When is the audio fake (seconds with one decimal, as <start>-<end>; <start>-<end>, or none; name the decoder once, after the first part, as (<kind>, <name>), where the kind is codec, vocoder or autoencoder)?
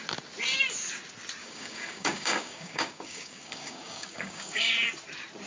1.4-4.7 (codec, DAC)